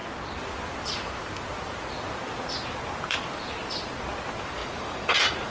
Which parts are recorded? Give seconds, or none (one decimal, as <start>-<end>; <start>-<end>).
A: 0.0-4.6